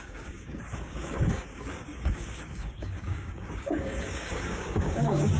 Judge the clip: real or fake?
fake